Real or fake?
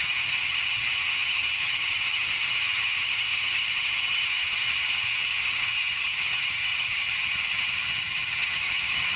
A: fake